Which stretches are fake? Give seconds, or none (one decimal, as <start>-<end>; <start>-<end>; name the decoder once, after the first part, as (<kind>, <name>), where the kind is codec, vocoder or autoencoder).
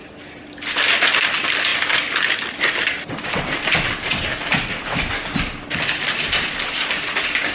none